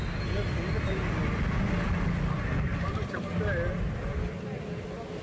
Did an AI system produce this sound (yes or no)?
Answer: no